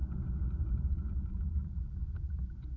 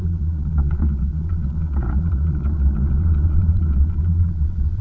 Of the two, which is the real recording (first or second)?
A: first